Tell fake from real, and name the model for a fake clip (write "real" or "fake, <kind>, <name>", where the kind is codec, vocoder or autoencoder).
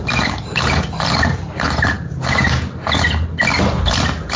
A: real